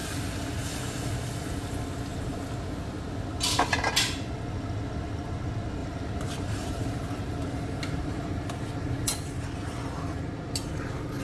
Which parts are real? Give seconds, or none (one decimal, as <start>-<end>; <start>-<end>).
0.0-5.8; 8.3-11.2